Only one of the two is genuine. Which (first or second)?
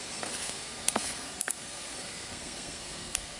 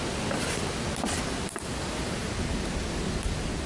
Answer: second